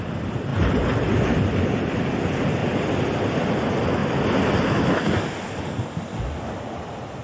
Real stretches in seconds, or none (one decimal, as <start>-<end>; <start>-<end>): 0.0-2.6; 3.4-7.2